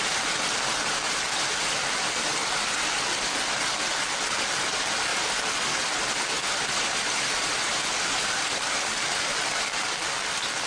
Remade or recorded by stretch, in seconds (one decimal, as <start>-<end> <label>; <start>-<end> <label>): 0.0-2.4 remade; 2.4-4.4 recorded; 4.4-5.1 remade; 5.1-7.2 recorded; 7.2-10.7 remade